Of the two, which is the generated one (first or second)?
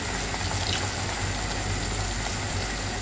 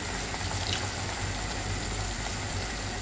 second